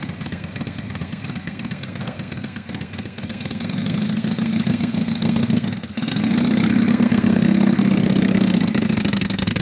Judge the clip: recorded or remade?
remade